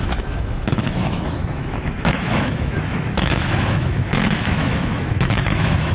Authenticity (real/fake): fake